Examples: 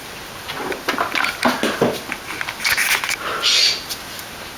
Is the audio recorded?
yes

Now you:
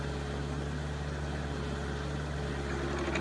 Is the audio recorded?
yes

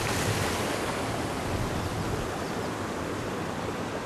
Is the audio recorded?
yes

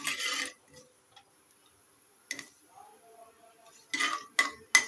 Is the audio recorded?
yes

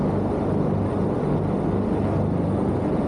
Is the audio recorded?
yes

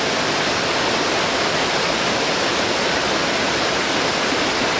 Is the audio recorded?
yes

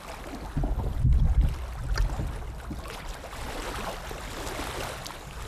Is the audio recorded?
yes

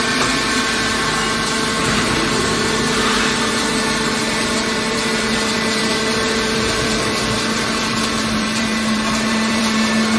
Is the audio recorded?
no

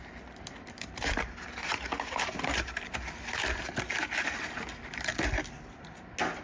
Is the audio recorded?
yes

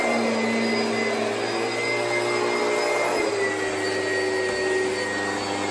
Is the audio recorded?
yes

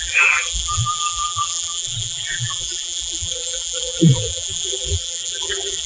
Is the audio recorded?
no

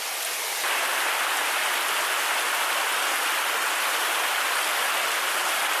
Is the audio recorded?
yes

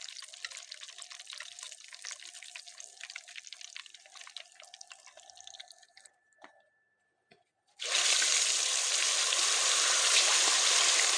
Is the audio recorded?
yes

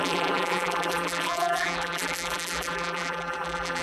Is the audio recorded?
no